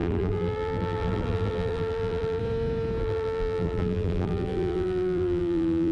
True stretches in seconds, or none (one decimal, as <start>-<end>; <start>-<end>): 2.4-3.0